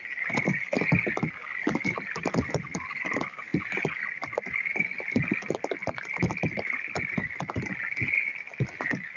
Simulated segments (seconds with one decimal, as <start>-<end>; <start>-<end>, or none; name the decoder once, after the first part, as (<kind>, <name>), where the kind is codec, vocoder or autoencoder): none